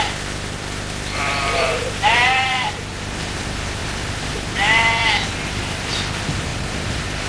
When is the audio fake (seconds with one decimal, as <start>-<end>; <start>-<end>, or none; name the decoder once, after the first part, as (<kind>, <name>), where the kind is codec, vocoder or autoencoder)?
0.0-5.0 (vocoder, BigVGAN v2); 5.6-7.3